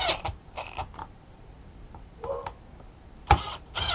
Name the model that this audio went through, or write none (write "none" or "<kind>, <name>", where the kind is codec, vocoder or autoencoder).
none